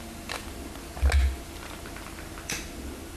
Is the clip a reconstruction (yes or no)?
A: no